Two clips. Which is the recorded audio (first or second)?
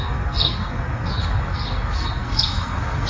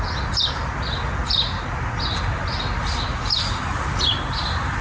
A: second